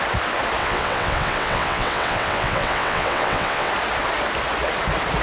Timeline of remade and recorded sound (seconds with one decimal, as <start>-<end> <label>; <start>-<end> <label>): 0.0-0.6 recorded; 0.6-3.7 remade; 3.7-5.2 recorded